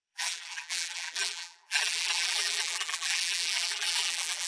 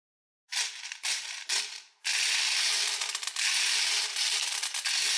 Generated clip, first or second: first